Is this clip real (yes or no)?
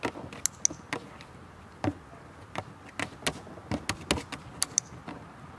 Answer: yes